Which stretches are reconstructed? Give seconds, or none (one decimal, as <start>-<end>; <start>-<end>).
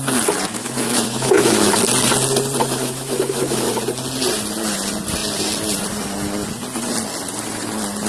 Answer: 0.6-1.8; 2.6-3.7